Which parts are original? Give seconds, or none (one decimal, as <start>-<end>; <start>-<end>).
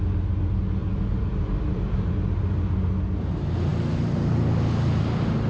0.0-0.8; 2.1-5.5